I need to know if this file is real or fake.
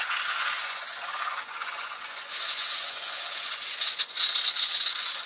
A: fake